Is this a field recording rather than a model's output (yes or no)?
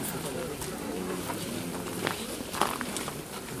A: yes